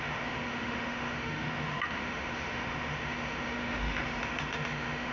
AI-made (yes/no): yes